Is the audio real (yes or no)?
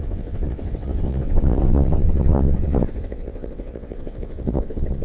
no